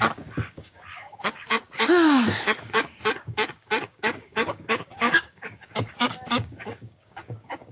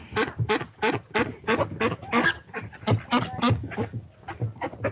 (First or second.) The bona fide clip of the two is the second